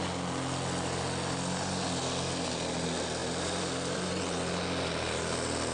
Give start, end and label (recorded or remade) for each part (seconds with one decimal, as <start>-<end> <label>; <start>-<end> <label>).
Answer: 0.0-3.2 recorded; 3.2-4.1 remade; 4.1-5.7 recorded